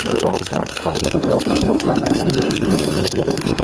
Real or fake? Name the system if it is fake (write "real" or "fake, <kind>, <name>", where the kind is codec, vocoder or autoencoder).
fake, codec, SNAC